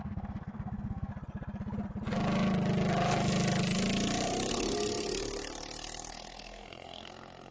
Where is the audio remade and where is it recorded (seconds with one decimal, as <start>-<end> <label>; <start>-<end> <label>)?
0.0-1.1 remade; 1.1-4.5 recorded; 4.5-5.2 remade; 5.2-6.1 recorded; 6.1-7.5 remade